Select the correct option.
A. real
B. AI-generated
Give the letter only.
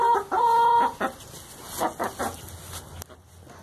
A